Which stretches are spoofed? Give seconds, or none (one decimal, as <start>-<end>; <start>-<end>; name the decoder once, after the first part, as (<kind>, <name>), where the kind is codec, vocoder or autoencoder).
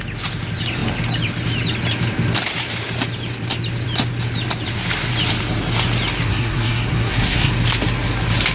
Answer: 6.3-7.5 (codec, SNAC)